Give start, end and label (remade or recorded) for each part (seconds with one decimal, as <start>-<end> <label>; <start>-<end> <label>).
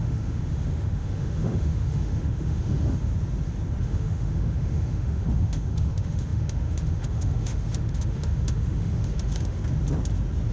0.0-3.1 remade; 3.1-3.8 recorded; 3.8-9.6 remade; 9.6-10.5 recorded